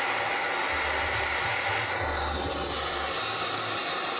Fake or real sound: real